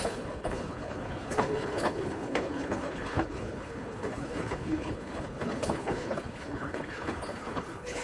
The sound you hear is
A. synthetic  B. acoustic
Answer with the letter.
A